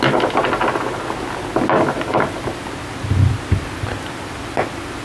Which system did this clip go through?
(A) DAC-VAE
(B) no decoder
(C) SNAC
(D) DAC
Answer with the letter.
B